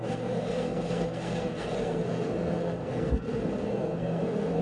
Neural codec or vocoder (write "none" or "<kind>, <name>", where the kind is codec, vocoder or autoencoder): codec, SNAC